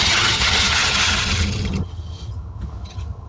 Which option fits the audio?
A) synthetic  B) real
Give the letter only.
A